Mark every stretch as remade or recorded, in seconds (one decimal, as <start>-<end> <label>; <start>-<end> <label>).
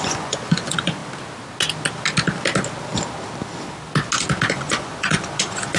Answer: 0.0-1.0 remade; 1.0-4.5 recorded; 4.5-5.8 remade